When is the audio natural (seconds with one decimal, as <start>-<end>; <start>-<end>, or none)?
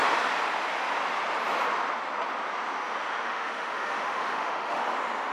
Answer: 0.0-3.3; 4.8-5.3